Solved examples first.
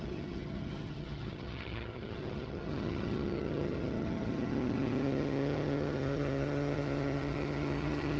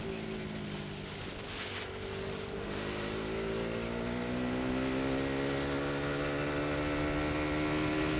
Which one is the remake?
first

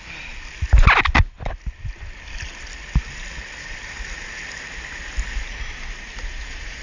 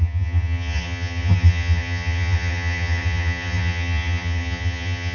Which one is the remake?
second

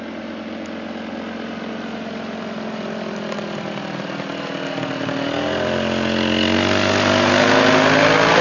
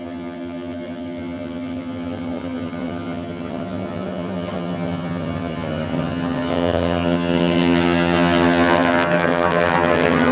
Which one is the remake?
second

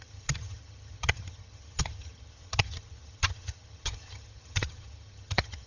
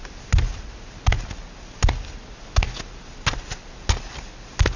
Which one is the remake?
first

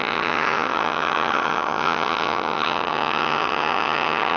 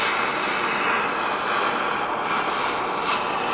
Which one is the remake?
first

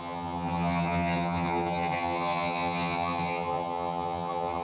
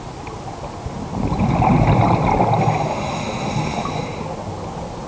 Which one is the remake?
first